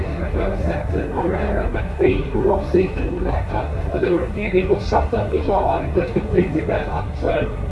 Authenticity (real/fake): fake